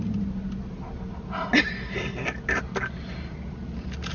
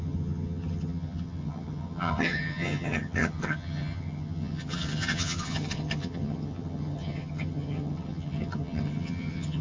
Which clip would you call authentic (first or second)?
first